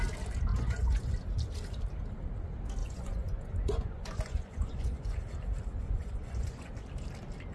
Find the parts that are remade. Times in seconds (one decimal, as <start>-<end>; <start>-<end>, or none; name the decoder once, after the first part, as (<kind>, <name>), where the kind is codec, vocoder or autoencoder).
0.5-1.1 (vocoder, Vocos); 2.8-5.2; 5.7-6.7